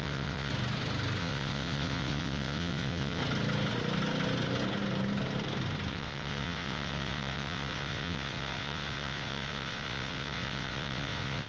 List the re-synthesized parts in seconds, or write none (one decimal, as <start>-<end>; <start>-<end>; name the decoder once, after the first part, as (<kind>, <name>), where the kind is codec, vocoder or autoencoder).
0.0-0.5 (vocoder, WaveNeXt); 1.2-3.2; 5.9-11.5